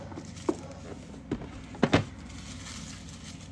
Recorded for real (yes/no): yes